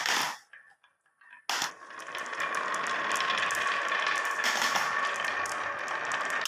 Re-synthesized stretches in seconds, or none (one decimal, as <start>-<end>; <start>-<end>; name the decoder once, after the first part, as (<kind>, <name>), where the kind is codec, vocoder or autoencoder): none